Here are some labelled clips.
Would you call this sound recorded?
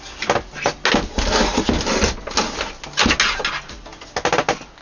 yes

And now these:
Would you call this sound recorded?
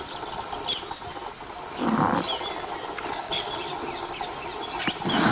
yes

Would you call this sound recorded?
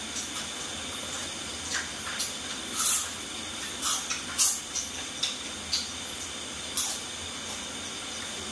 yes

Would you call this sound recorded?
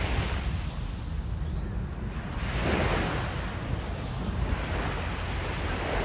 yes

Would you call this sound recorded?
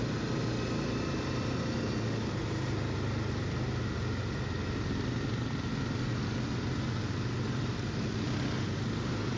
yes